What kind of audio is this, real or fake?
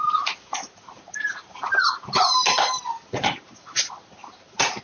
fake